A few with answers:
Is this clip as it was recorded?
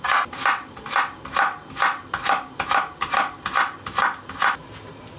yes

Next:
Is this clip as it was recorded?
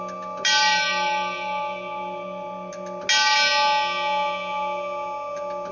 yes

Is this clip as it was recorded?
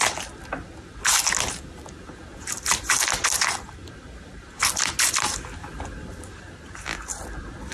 yes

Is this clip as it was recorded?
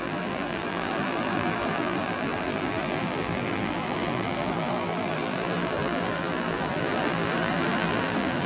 no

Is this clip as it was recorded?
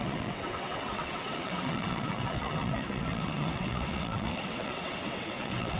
no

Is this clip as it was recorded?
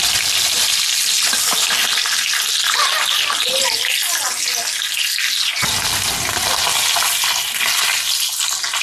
yes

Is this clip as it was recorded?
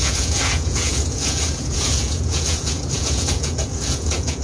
no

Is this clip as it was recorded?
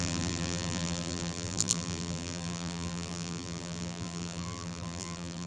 no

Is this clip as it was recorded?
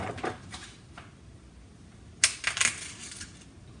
yes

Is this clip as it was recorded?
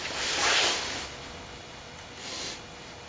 yes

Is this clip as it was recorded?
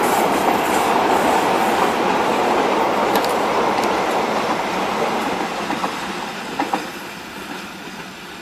yes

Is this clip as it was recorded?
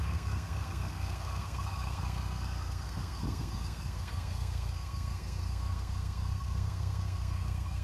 no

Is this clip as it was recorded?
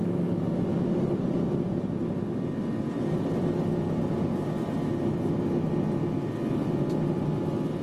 yes